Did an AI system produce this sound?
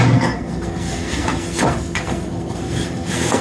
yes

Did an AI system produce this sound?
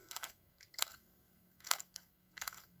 yes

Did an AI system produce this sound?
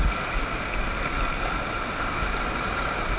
no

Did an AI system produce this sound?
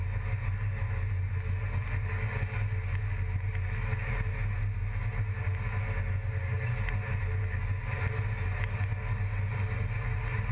no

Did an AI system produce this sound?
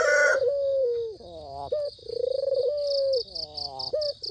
no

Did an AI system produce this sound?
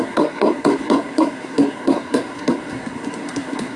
yes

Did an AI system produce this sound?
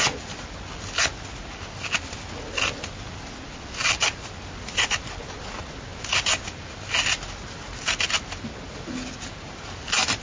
no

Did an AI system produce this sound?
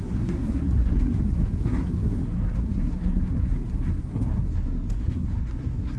yes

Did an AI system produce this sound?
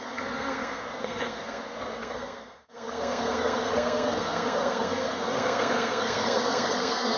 yes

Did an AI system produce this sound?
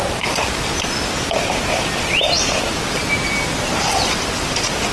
no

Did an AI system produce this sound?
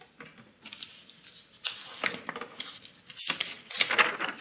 no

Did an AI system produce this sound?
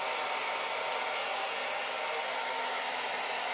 no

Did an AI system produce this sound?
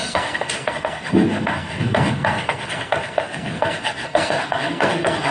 yes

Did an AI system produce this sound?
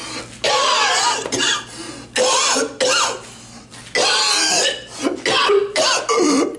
no